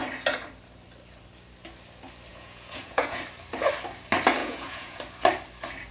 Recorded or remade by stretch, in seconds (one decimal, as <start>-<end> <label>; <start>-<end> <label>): 0.0-2.3 recorded; 2.3-3.2 remade; 3.2-4.4 recorded; 4.4-5.0 remade; 5.0-5.9 recorded